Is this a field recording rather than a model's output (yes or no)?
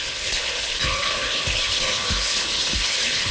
no